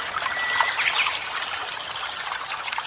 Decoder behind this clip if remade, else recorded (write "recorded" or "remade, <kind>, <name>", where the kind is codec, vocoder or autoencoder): recorded